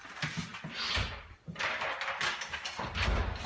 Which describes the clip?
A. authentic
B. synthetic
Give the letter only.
A